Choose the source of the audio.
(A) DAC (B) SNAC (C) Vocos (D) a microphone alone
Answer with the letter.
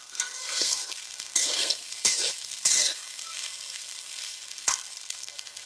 B